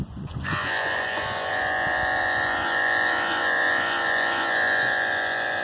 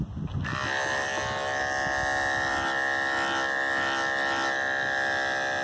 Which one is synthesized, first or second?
first